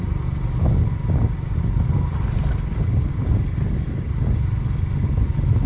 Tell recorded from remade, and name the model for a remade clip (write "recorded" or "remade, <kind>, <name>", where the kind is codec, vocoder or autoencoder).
recorded